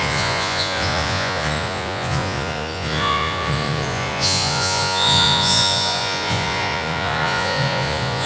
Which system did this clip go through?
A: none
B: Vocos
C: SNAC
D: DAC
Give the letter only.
B